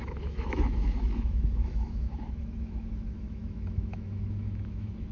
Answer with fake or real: fake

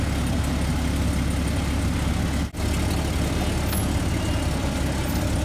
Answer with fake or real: real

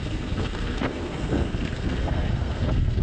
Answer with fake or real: fake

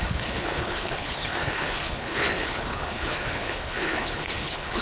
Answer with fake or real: fake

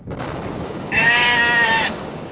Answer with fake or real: fake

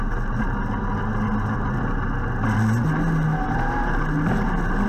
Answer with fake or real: real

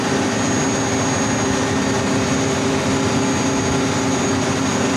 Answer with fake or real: real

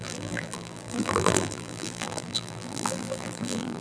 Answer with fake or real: fake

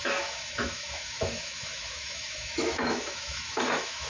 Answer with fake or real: fake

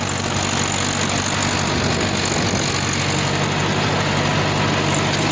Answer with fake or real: real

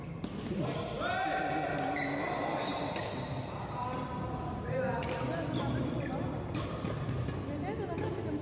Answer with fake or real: real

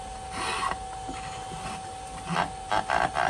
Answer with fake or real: real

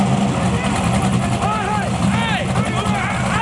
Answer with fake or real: real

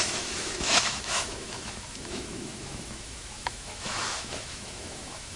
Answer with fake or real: fake